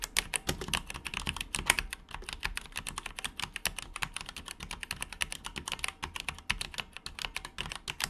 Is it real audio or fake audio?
real